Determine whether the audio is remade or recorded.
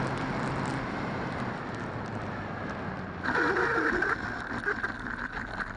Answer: recorded